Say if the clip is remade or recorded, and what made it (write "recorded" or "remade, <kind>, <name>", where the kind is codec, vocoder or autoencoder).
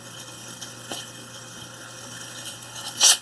remade, codec, HILCodec